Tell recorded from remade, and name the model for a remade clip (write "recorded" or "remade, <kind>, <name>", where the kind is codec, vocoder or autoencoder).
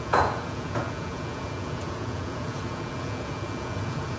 remade, vocoder, Vocos